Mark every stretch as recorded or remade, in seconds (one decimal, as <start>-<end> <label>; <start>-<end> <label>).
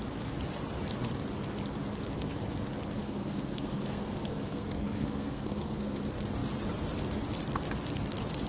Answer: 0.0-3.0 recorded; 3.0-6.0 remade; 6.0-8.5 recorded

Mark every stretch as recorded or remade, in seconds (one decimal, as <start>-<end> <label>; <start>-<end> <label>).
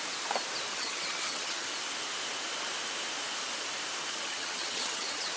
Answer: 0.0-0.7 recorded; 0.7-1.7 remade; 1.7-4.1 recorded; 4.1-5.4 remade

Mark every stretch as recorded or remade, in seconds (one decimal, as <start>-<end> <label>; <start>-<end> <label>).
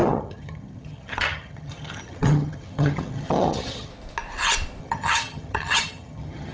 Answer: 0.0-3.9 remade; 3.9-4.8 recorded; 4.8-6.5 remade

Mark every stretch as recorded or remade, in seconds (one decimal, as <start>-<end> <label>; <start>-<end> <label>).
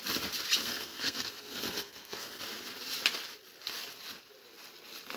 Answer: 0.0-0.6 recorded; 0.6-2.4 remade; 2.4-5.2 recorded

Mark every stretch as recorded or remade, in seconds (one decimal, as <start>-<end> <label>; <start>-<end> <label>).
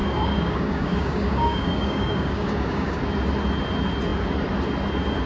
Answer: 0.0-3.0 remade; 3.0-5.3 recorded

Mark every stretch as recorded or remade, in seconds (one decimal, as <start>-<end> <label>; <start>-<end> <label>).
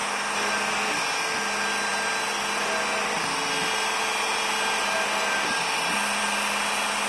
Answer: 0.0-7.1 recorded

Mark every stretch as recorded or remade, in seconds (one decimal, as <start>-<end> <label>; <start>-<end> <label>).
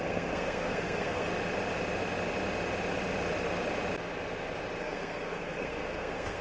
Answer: 0.0-1.3 remade; 1.3-4.8 recorded; 4.8-6.4 remade